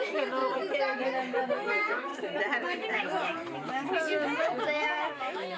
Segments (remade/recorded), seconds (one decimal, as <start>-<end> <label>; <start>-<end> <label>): 0.0-0.4 remade; 0.4-1.5 recorded; 1.5-2.1 remade; 2.1-2.9 recorded; 2.9-3.3 remade; 3.3-4.4 recorded; 4.4-5.6 remade